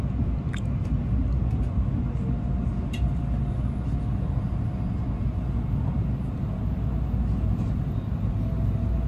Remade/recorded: recorded